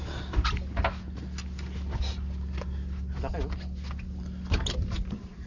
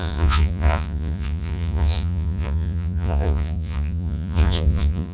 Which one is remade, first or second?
second